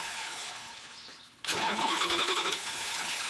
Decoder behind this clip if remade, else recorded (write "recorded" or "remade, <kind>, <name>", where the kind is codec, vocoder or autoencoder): remade, codec, HILCodec